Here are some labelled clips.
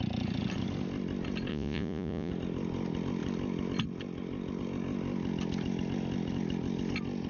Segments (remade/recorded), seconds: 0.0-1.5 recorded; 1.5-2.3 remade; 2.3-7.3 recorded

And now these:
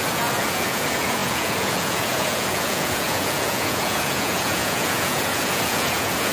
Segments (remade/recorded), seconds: 0.0-6.3 remade

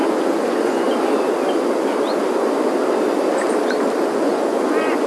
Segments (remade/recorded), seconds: 0.0-0.9 remade; 0.9-4.0 recorded; 4.0-5.1 remade

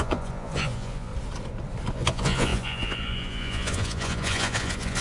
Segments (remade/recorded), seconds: 0.0-1.1 remade; 1.1-1.9 recorded; 1.9-5.0 remade

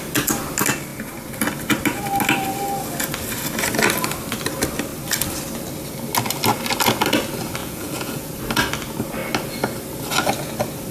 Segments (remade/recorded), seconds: 0.0-7.6 recorded; 7.6-8.3 remade; 8.3-10.9 recorded